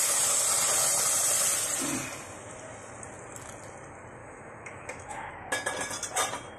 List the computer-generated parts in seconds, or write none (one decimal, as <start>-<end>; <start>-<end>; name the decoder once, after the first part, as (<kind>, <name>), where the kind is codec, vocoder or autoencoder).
4.2-5.3 (autoencoder, DAC-VAE)